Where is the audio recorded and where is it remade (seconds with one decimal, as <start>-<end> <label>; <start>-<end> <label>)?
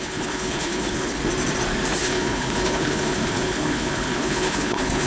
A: 0.0-1.2 remade; 1.2-2.0 recorded; 2.0-5.1 remade